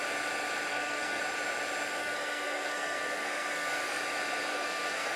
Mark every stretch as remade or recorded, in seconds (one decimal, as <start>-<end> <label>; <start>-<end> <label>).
0.0-0.7 recorded; 0.7-1.2 remade; 1.2-2.0 recorded; 2.0-4.0 remade; 4.0-4.5 recorded; 4.5-5.2 remade